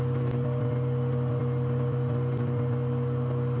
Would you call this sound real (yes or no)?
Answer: yes